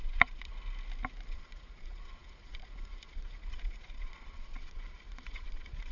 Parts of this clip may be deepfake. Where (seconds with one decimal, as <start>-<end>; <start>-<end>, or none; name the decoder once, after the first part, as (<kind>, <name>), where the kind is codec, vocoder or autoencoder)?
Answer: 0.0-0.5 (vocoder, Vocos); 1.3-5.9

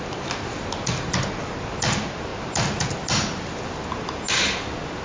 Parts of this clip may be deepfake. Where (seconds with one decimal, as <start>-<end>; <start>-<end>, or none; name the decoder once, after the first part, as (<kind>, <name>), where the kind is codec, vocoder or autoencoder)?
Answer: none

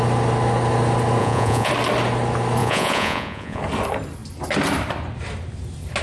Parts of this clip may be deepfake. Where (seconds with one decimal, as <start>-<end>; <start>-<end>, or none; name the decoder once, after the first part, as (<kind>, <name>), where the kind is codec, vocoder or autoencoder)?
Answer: 1.2-1.7 (vocoder, Vocos); 2.6-3.6